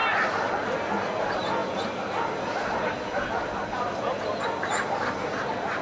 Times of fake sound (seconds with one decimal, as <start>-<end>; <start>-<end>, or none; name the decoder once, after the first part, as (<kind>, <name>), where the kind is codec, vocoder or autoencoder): none

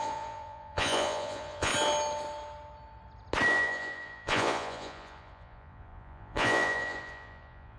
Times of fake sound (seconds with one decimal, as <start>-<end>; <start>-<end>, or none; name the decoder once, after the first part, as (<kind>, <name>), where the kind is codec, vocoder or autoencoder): 0.0-1.7 (vocoder, Vocos); 3.5-7.8